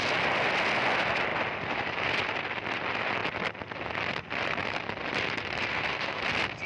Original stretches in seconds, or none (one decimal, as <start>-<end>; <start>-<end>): 0.0-5.7; 6.2-6.7